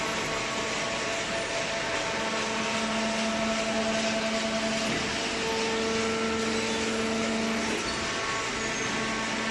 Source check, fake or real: real